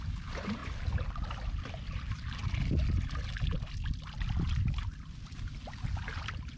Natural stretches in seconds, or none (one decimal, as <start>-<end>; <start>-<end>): 0.6-1.9; 2.4-6.6